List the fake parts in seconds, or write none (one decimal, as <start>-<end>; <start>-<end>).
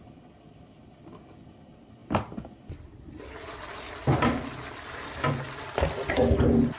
none